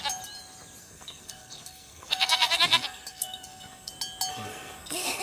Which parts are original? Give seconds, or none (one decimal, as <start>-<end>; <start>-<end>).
0.0-0.8; 3.9-4.3